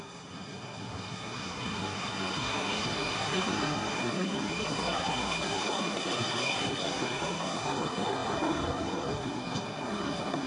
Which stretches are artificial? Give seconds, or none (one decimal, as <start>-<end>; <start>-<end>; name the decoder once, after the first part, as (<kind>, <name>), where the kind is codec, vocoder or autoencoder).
0.0-10.5 (codec, SNAC)